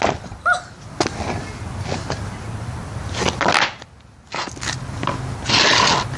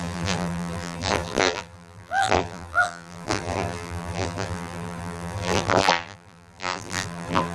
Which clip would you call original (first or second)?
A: first